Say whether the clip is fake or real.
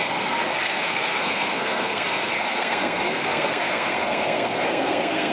fake